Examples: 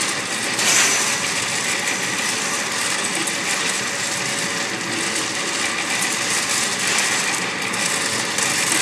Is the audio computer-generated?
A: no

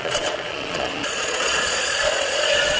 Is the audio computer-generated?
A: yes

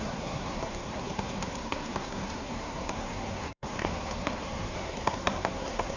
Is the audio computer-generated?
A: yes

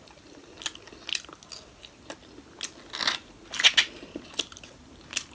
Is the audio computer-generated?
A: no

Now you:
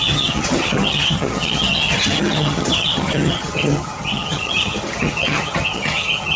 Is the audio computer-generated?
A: yes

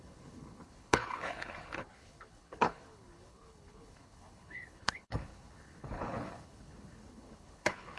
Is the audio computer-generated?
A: yes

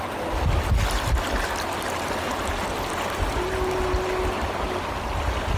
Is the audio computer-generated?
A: no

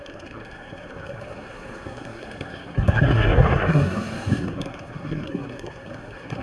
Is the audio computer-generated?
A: yes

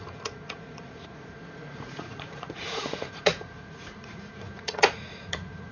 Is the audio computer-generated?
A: yes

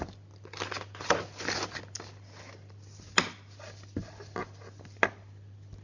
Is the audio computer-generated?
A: no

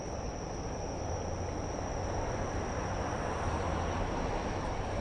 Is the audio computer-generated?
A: no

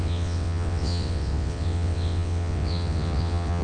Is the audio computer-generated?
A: yes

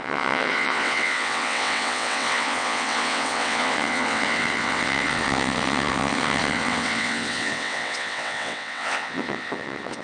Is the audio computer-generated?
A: yes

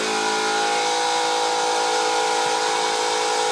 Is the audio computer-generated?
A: no